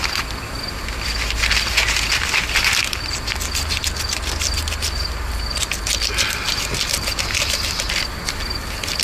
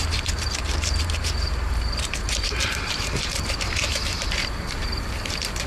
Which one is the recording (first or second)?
first